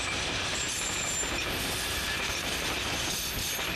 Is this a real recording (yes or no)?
yes